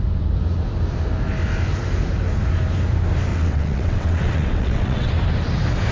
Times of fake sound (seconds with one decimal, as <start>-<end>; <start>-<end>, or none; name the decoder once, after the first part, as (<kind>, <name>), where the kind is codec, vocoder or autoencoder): 3.3-5.1 (vocoder, WaveNeXt)